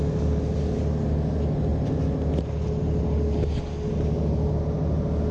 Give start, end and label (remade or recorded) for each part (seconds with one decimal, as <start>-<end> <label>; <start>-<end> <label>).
0.0-5.3 recorded